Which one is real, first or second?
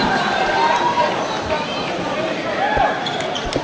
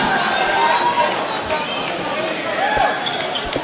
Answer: second